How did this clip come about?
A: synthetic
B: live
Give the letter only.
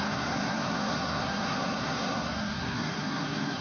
A